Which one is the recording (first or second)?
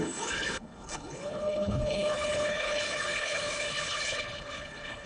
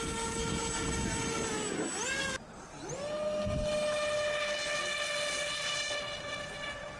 second